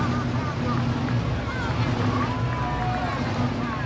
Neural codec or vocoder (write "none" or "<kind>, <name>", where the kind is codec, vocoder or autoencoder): none